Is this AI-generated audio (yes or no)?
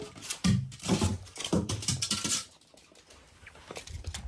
no